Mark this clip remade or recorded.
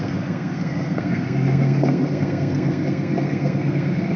remade